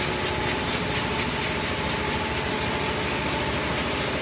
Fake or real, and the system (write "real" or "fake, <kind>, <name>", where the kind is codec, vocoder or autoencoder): real